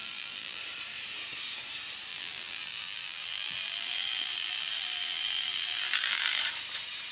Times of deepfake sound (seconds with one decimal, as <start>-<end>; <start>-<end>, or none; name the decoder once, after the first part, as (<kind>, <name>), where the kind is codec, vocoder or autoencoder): 0.0-0.6 (vocoder, BigVGAN v2); 2.1-6.4